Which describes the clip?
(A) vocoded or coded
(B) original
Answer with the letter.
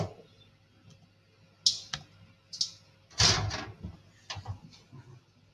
B